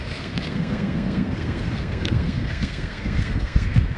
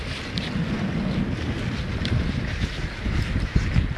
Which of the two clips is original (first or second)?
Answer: second